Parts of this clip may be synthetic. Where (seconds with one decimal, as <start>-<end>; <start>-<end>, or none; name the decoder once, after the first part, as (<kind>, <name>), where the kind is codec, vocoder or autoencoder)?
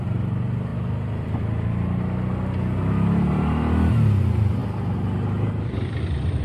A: none